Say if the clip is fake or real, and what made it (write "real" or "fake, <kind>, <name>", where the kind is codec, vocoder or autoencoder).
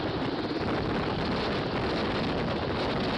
real